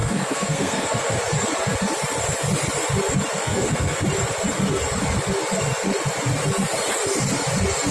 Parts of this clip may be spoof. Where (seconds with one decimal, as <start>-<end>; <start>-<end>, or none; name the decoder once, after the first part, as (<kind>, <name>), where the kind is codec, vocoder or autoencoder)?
0.0-1.2 (codec, SNAC); 3.4-4.0